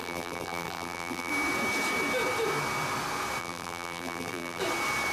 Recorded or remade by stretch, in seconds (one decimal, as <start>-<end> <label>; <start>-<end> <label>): 0.0-1.3 remade; 1.3-3.4 recorded; 3.4-4.6 remade; 4.6-5.1 recorded